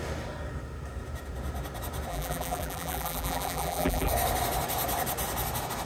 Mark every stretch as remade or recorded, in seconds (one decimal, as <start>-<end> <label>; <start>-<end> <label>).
0.0-2.1 recorded; 2.1-4.1 remade; 4.1-5.9 recorded